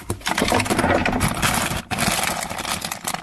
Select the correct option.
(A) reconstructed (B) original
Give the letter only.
B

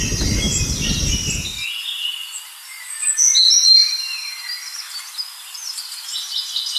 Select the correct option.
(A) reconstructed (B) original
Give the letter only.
B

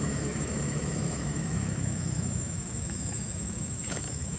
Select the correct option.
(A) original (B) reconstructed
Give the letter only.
B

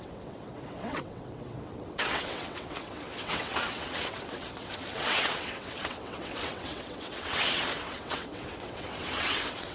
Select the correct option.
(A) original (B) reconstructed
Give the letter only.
B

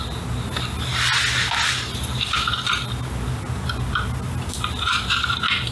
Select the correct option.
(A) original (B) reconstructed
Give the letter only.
A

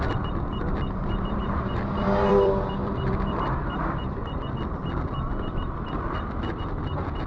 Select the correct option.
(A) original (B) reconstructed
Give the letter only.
B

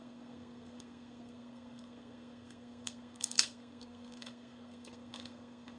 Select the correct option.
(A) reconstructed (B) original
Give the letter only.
A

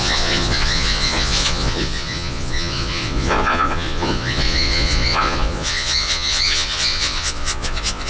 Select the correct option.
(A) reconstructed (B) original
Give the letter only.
A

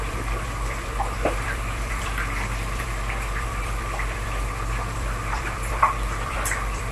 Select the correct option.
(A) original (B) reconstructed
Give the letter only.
B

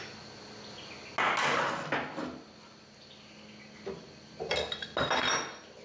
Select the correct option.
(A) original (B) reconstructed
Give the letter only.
A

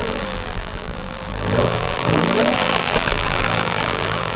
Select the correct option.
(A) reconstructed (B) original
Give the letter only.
A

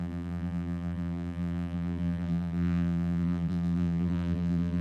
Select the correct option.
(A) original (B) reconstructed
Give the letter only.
B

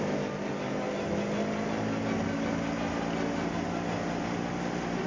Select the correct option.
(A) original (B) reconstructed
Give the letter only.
A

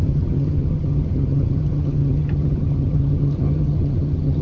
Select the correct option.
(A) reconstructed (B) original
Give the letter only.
A